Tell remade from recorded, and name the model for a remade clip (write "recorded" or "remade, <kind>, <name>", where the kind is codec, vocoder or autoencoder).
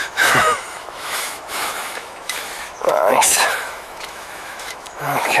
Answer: remade, autoencoder, DAC-VAE